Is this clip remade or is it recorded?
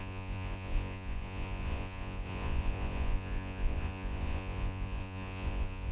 remade